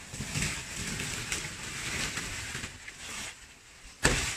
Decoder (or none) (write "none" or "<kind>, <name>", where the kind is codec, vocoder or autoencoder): none